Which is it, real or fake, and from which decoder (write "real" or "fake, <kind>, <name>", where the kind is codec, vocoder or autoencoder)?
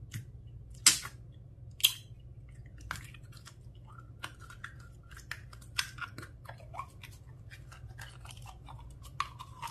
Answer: real